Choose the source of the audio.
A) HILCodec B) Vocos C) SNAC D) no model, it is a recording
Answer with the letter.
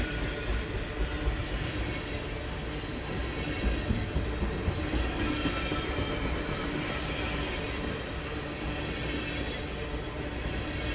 D